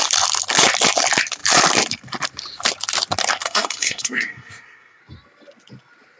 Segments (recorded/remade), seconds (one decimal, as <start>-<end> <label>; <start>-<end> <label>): 0.0-3.4 recorded; 3.4-5.0 remade; 5.0-6.2 recorded